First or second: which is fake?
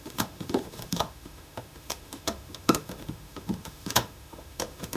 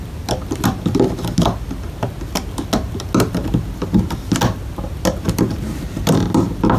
first